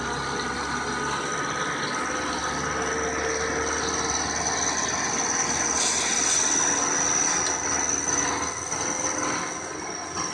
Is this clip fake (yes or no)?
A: no